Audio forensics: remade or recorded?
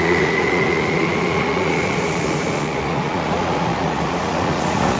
remade